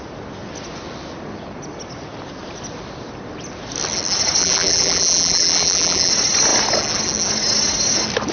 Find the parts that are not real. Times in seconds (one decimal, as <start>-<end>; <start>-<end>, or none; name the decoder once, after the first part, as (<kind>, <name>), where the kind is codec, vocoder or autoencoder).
4.4-6.1 (vocoder, BigVGAN v2)